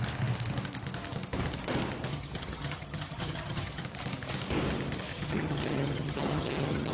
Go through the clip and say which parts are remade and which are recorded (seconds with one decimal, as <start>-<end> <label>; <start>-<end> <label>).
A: 0.0-2.1 recorded; 2.1-3.8 remade; 3.8-5.1 recorded; 5.1-6.9 remade